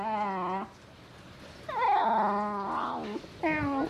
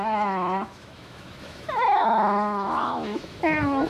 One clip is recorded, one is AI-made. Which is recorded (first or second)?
first